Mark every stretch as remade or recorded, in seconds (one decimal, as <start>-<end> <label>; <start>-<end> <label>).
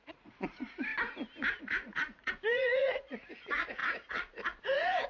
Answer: 0.0-0.9 remade; 0.9-1.6 recorded; 1.6-5.1 remade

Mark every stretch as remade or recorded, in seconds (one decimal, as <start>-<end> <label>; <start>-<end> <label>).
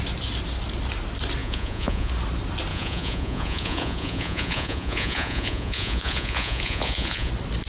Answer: 0.0-1.4 recorded; 1.4-2.1 remade; 2.1-2.7 recorded; 2.7-7.3 remade; 7.3-7.7 recorded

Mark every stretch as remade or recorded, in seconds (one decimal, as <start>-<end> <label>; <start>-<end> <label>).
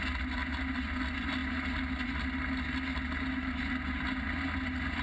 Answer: 0.0-5.0 recorded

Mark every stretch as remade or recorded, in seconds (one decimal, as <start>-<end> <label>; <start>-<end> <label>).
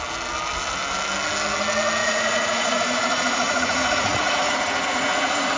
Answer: 0.0-2.0 recorded; 2.0-5.6 remade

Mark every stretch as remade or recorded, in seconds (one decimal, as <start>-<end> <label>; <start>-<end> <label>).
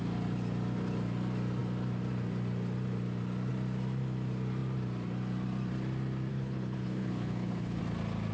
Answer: 0.0-6.3 recorded; 6.3-7.8 remade; 7.8-8.3 recorded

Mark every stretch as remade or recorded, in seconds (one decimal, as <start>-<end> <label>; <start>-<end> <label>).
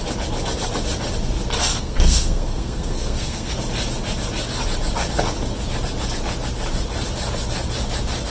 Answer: 0.0-1.7 recorded; 1.7-3.5 remade; 3.5-8.3 recorded